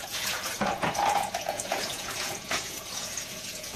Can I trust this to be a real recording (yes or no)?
no